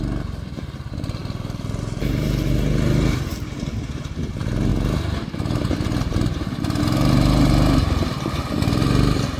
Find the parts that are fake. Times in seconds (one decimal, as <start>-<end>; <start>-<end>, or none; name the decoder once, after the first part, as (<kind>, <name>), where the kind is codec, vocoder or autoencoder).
none